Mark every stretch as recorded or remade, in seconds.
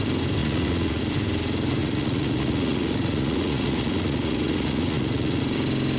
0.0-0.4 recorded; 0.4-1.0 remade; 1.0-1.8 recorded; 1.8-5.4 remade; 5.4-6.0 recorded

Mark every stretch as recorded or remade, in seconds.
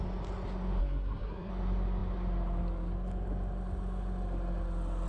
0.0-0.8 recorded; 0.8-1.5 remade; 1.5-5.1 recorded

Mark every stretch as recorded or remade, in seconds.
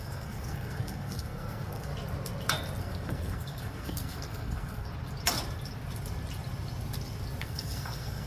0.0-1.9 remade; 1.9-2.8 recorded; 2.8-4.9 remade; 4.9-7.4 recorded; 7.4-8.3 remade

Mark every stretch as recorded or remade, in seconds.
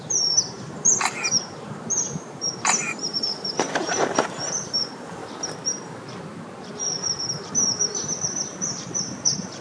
0.0-5.2 remade; 5.2-6.9 recorded; 6.9-9.6 remade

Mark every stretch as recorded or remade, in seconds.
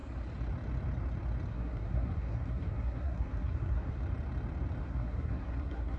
0.0-1.5 recorded; 1.5-4.0 remade; 4.0-4.8 recorded; 4.8-6.0 remade